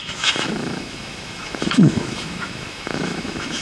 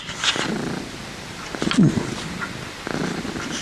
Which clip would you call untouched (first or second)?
second